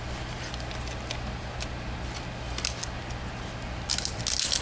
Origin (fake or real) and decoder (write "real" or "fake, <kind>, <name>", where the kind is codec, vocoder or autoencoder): real